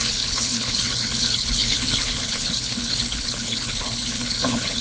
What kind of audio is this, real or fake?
fake